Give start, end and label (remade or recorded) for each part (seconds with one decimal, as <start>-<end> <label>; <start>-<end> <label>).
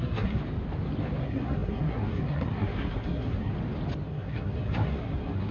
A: 0.0-0.4 remade; 0.4-1.2 recorded; 1.2-3.5 remade; 3.5-4.1 recorded; 4.1-5.5 remade